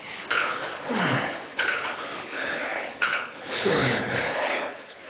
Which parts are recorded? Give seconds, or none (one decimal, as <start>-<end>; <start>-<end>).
none